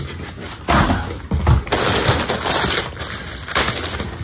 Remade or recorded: recorded